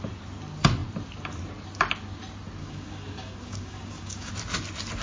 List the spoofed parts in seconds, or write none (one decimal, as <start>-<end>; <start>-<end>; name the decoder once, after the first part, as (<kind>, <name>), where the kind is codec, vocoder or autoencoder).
2.6-4.3 (codec, DAC)